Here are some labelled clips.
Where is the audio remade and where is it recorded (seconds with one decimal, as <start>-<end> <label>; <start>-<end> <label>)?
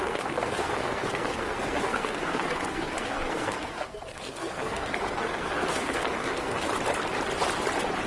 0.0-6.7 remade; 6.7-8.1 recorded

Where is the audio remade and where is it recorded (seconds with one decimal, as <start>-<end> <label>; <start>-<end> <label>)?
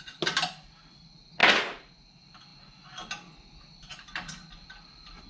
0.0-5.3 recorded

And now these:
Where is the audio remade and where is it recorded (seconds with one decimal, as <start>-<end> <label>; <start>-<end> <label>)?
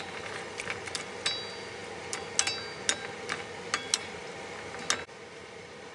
0.0-5.9 recorded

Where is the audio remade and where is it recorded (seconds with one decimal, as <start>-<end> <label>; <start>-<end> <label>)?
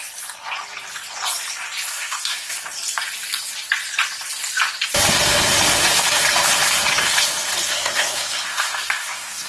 0.0-1.9 recorded; 1.9-2.5 remade; 2.5-7.7 recorded; 7.7-9.5 remade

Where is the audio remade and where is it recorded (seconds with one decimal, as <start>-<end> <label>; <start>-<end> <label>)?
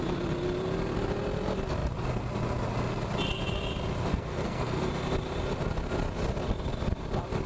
0.0-4.1 recorded; 4.1-4.9 remade; 4.9-7.5 recorded